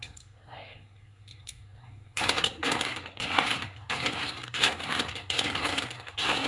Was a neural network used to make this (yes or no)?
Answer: yes